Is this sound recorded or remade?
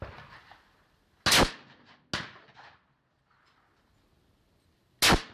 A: recorded